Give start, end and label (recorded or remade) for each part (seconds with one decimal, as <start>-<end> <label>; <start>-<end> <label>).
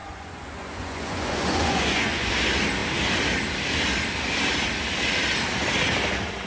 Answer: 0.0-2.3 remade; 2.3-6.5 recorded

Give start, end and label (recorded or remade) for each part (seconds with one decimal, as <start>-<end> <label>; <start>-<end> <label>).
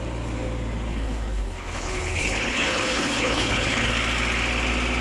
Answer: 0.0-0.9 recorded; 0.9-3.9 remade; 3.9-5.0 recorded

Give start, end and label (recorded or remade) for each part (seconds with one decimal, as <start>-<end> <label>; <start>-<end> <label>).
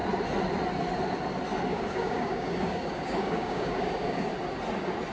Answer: 0.0-1.7 recorded; 1.7-4.3 remade; 4.3-5.1 recorded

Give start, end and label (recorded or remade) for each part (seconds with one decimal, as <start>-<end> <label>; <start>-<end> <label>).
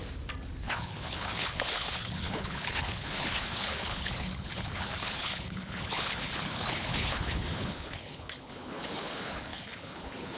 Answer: 0.0-0.6 recorded; 0.6-10.4 remade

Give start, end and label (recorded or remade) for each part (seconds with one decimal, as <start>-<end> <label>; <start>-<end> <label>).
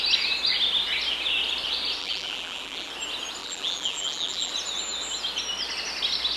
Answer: 0.0-2.0 recorded; 2.0-2.9 remade; 2.9-3.4 recorded; 3.4-4.5 remade; 4.5-6.4 recorded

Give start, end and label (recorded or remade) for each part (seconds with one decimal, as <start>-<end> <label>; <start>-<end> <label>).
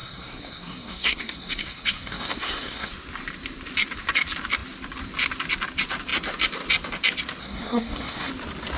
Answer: 0.0-2.9 remade; 2.9-7.4 recorded; 7.4-8.3 remade; 8.3-8.8 recorded